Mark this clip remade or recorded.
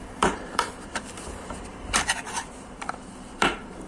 remade